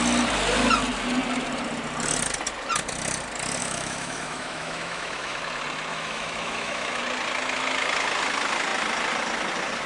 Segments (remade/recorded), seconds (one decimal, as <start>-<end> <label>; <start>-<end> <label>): 0.0-3.6 recorded; 3.6-5.4 remade; 5.4-5.9 recorded; 5.9-7.0 remade; 7.0-9.9 recorded